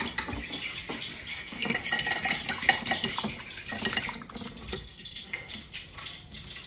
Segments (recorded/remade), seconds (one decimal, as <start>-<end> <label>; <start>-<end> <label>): 0.0-1.3 recorded; 1.3-1.8 remade; 1.8-4.7 recorded; 4.7-5.5 remade; 5.5-6.7 recorded